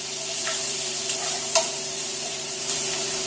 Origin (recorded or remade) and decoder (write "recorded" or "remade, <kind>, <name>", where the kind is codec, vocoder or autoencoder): remade, vocoder, BigVGAN v2